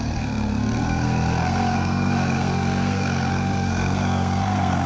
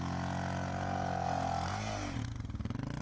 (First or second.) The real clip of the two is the second